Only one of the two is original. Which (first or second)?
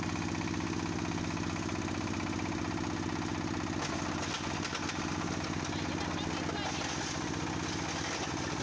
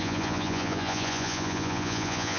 first